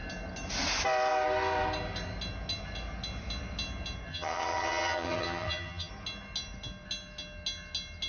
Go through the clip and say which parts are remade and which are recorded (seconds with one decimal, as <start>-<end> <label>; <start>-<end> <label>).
0.0-4.1 recorded; 4.1-5.9 remade; 5.9-8.1 recorded